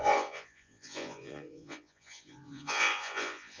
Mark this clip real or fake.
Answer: fake